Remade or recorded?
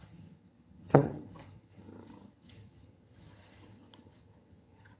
remade